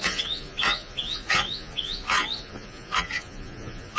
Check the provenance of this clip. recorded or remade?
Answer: remade